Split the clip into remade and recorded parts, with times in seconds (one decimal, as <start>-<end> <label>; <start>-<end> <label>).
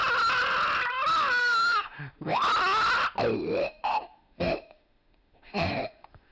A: 0.0-1.4 recorded; 1.4-2.4 remade; 2.4-3.6 recorded; 3.6-6.3 remade